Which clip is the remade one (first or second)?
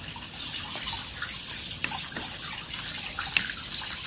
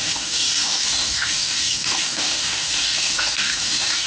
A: second